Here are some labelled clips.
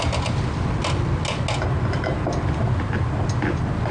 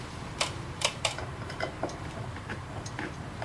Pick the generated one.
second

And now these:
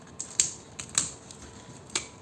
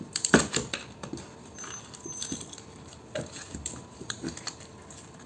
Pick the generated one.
second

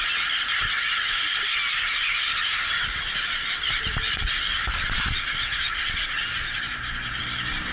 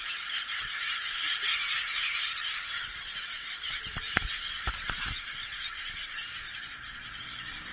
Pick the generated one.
second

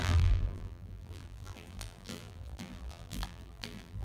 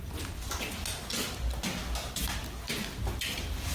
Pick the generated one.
first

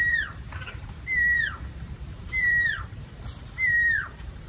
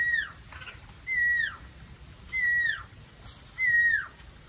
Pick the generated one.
first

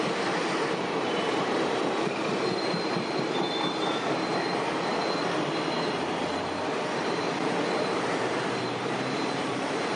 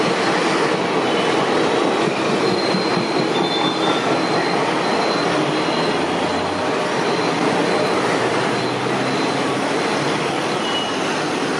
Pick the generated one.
first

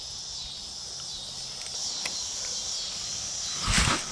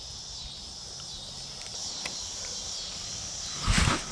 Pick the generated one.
second